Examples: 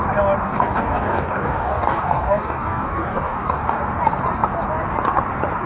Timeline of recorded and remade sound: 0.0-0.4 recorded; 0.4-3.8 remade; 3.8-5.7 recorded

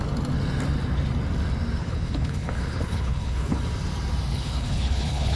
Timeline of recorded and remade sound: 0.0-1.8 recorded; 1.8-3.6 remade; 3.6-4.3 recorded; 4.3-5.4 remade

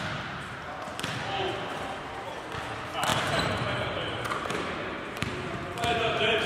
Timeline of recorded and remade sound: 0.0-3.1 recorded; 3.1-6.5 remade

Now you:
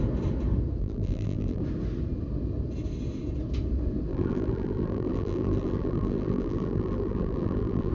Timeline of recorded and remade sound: 0.0-0.8 recorded; 0.8-1.6 remade; 1.6-4.1 recorded; 4.1-7.9 remade

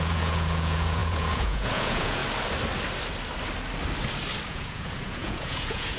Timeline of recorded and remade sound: 0.0-2.2 remade; 2.2-4.5 recorded; 4.5-6.0 remade

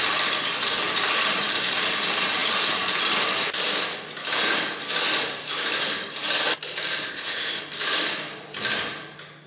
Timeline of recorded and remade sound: 0.0-7.1 recorded; 7.1-7.6 remade; 7.6-9.5 recorded